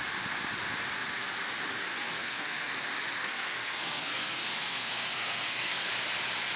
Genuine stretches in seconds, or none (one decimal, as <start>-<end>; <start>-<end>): 0.0-1.8; 2.7-3.2; 5.9-6.6